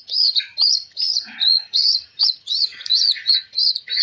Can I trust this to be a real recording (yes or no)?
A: no